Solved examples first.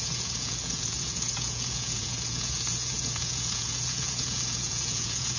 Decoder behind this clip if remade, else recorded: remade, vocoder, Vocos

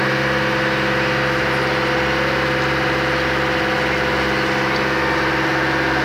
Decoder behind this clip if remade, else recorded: recorded